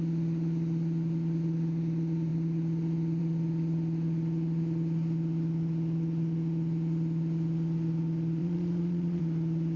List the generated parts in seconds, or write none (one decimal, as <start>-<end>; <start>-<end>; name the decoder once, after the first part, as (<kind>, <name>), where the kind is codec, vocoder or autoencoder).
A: 8.4-9.2 (vocoder, Vocos)